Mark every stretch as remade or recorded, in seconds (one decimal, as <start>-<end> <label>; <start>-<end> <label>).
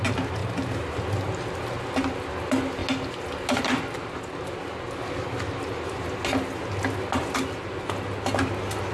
0.0-8.9 recorded